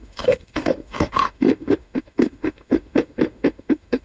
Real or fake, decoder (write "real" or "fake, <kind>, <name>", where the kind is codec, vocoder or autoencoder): fake, autoencoder, DAC-VAE